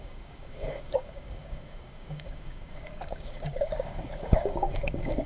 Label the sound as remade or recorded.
remade